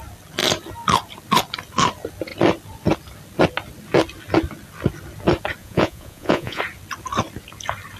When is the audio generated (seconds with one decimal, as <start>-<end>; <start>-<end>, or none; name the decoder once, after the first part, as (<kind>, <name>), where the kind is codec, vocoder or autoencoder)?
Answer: 5.6-6.6 (vocoder, Vocos)